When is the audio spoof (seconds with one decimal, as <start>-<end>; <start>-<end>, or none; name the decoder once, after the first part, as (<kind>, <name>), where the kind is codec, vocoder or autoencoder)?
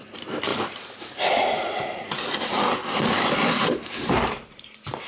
0.0-0.5 (vocoder, BigVGAN v2); 1.0-5.1